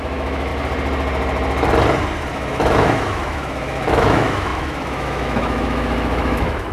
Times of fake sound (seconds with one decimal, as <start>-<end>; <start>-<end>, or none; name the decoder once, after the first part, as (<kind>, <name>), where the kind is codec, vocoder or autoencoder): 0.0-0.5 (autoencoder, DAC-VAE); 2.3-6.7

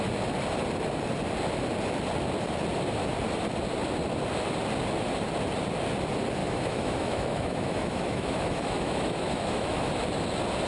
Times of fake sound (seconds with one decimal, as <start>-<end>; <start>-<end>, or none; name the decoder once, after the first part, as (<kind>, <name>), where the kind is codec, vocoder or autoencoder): 6.4-9.9 (autoencoder, DAC-VAE)

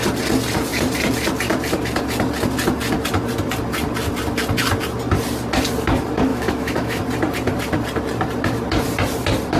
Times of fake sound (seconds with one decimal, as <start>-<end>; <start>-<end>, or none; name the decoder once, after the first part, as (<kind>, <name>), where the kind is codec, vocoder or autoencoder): 6.3-7.0 (autoencoder, DAC-VAE)

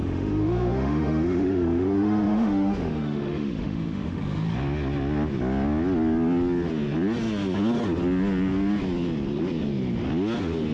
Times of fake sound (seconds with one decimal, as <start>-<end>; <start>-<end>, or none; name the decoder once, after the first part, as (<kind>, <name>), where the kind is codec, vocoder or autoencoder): 0.0-4.2 (autoencoder, DAC-VAE)

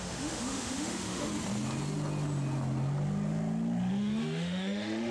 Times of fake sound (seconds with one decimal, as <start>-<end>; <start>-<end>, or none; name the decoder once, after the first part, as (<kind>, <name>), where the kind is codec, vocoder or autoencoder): 0.0-1.3 (autoencoder, DAC-VAE); 3.9-5.1

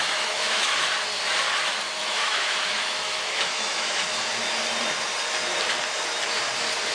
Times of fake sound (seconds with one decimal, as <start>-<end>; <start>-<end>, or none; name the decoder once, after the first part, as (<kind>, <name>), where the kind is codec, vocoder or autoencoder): 0.0-0.9 (autoencoder, DAC-VAE); 2.0-4.1

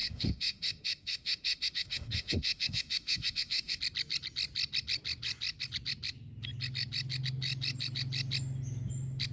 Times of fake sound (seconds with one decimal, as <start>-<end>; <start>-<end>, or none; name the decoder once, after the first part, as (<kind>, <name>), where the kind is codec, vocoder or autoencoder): 0.0-3.8 (autoencoder, DAC-VAE)

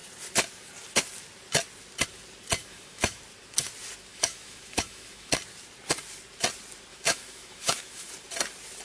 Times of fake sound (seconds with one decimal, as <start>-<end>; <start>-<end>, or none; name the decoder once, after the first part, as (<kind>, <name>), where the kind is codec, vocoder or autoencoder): 2.6-3.2 (autoencoder, DAC-VAE); 4.1-5.3; 6.9-8.1